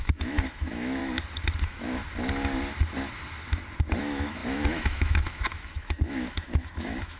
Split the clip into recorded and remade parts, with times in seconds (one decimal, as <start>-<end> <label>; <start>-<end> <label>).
0.0-1.0 remade; 1.0-1.6 recorded; 1.6-2.0 remade; 2.0-4.0 recorded; 4.0-7.2 remade